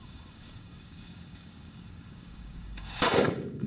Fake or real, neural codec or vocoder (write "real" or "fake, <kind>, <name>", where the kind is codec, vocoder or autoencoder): fake, codec, DAC